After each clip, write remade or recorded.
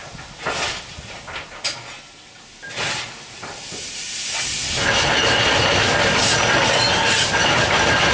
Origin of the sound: recorded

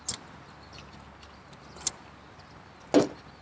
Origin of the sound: recorded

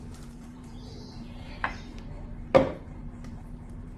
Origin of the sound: remade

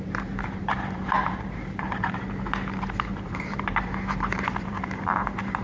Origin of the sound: remade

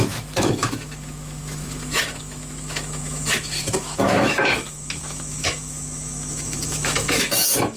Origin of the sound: remade